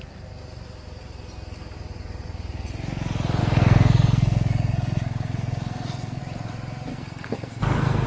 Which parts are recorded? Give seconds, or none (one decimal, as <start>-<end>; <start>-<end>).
0.0-3.4; 6.2-6.9